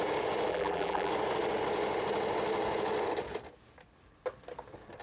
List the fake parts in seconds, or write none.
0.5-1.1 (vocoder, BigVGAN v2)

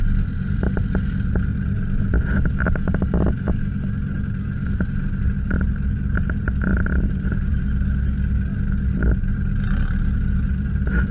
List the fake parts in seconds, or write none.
6.7-7.6 (vocoder, BigVGAN v2)

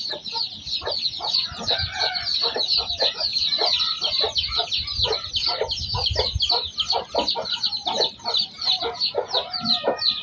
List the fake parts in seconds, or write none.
none

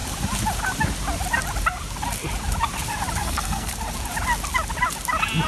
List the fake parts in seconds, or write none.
3.2-3.7 (codec, SNAC)